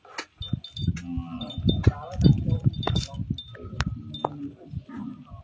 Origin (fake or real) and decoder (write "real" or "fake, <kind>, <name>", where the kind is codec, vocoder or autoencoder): real